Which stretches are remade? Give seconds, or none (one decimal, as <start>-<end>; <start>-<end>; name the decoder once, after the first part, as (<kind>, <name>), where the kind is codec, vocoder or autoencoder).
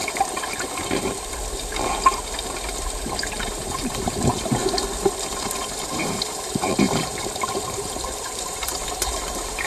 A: 3.3-4.6 (vocoder, BigVGAN v2); 5.6-9.7